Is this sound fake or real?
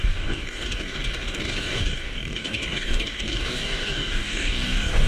fake